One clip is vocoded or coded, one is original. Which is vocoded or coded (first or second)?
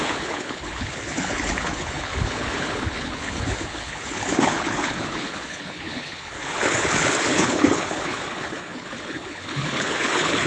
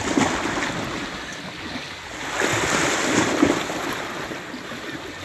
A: first